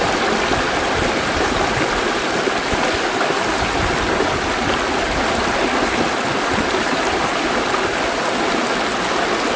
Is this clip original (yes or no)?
yes